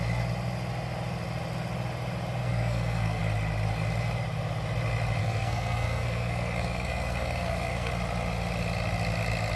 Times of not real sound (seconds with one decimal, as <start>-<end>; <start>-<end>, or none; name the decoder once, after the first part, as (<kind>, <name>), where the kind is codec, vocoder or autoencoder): 2.4-3.2 (codec, SNAC); 5.2-7.9